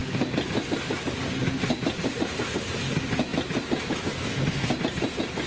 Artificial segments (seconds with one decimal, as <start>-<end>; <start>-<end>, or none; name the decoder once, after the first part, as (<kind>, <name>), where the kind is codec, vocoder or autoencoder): none